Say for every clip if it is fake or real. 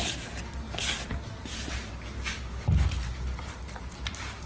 real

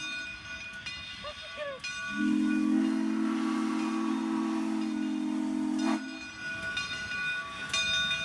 real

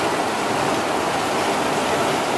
real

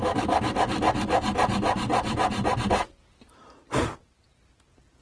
real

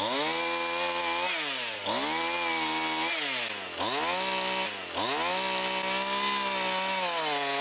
real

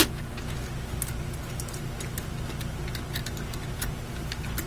real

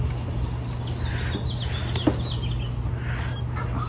real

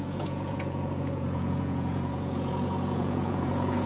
fake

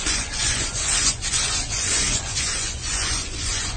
fake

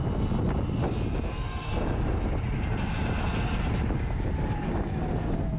real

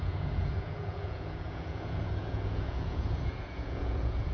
fake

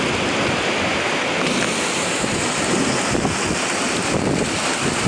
real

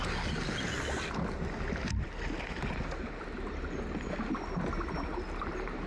real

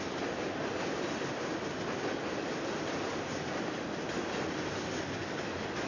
real